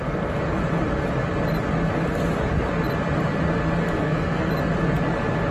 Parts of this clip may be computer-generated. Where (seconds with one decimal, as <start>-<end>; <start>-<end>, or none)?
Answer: 4.0-4.5